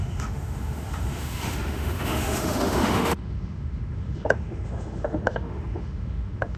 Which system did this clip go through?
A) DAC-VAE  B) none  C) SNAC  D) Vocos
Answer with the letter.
A